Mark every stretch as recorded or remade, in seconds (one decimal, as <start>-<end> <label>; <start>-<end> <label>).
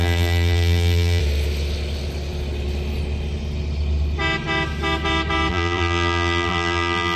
0.0-1.2 remade; 1.2-5.5 recorded; 5.5-7.2 remade